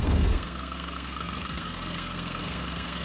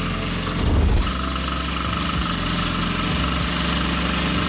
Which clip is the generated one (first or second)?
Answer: first